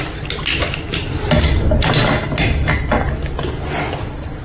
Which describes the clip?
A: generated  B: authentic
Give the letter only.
B